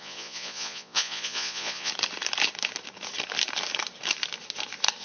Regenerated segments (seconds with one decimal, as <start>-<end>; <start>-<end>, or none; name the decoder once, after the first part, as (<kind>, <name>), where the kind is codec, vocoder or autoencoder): 0.0-1.9 (vocoder, Vocos)